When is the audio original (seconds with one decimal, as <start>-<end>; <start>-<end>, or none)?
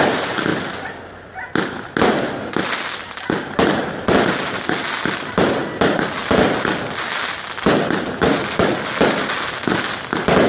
0.0-10.5